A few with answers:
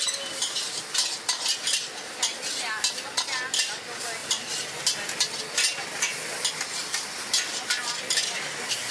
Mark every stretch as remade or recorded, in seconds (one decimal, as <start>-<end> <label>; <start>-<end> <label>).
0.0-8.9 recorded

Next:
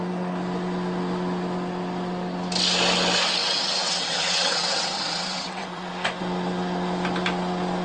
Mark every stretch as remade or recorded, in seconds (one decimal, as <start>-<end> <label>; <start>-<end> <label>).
0.0-3.4 recorded; 3.4-5.9 remade; 5.9-7.8 recorded

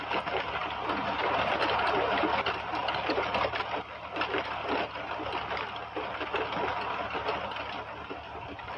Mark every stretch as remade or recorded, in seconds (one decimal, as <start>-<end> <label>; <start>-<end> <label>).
0.0-2.8 recorded; 2.8-7.4 remade; 7.4-8.8 recorded

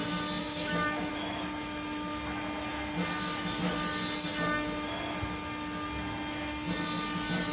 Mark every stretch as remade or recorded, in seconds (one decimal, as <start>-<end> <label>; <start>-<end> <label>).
0.0-0.4 recorded; 0.4-1.1 remade; 1.1-7.5 recorded